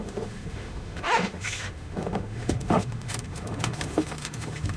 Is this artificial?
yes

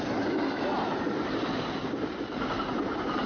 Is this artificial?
no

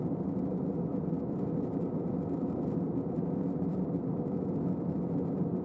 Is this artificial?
no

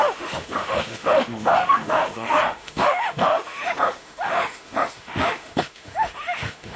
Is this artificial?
yes